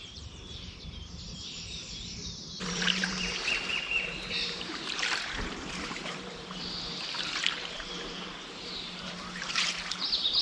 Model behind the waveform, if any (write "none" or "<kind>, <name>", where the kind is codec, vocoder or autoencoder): vocoder, BigVGAN v2